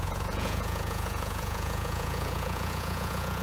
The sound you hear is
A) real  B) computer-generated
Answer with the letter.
B